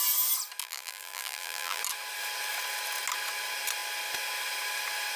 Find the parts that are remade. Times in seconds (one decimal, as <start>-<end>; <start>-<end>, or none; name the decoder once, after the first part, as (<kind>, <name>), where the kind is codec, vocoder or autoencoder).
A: 0.6-1.8 (vocoder, BigVGAN v2)

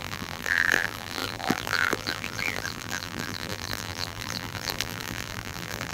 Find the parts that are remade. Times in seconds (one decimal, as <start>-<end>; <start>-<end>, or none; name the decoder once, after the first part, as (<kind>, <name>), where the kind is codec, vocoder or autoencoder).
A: 0.0-5.9 (vocoder, BigVGAN v2)

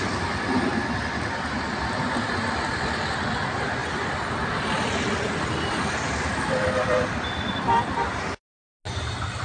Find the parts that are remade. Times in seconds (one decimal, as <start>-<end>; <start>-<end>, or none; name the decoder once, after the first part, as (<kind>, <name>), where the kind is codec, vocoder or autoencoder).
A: 3.8-8.5 (vocoder, BigVGAN v2)

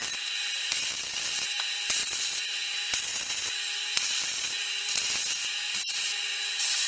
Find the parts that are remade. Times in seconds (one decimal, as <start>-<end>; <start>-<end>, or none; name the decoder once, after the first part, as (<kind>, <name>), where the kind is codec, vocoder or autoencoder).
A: 5.4-6.1 (vocoder, BigVGAN v2)